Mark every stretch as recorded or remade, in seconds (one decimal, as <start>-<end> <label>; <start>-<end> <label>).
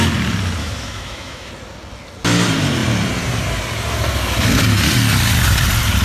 0.0-0.6 recorded; 0.6-1.5 remade; 1.5-6.0 recorded